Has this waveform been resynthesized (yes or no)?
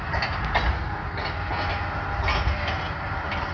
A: no